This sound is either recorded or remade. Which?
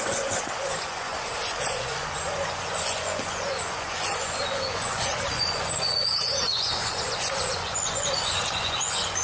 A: remade